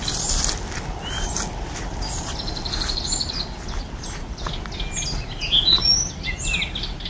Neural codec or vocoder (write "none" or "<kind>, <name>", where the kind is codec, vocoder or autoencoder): none